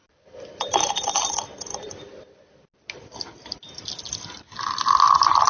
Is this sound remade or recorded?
recorded